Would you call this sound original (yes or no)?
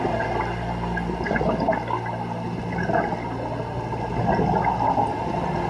yes